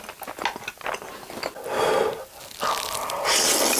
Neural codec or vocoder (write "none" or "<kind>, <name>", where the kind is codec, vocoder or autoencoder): none